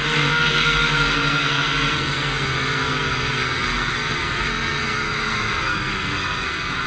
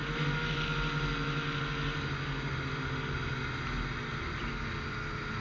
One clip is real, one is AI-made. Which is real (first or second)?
second